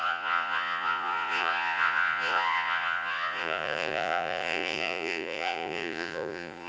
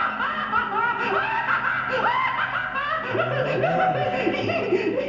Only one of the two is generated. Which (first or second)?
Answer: first